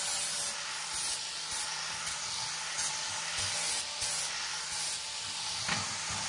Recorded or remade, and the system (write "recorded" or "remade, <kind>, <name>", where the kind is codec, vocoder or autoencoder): recorded